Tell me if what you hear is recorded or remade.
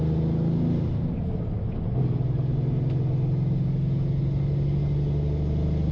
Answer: recorded